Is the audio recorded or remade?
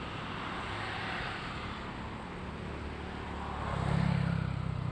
recorded